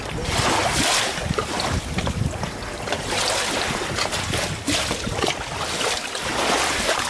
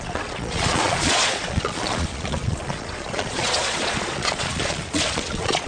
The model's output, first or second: second